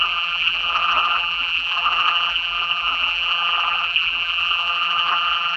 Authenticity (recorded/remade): remade